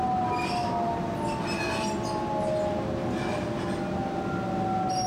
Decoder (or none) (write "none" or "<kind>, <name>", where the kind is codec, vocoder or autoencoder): none